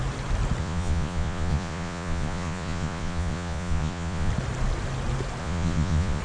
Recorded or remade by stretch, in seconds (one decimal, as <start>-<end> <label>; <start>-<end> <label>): 0.0-0.6 recorded; 0.6-4.3 remade; 4.3-5.4 recorded; 5.4-6.2 remade